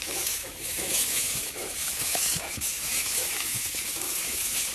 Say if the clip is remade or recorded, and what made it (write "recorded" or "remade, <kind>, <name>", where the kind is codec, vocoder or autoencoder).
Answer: remade, autoencoder, DAC-VAE